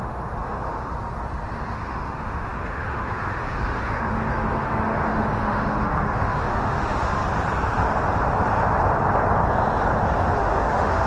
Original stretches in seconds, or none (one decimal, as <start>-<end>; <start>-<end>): 0.9-1.7; 7.2-10.4